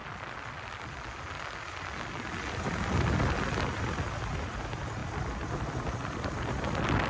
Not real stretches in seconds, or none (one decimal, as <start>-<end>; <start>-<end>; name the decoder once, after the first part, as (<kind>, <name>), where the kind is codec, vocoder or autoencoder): none